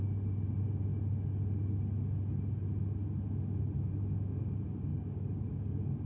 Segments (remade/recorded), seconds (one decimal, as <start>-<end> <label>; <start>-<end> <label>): 0.0-4.9 recorded; 4.9-6.1 remade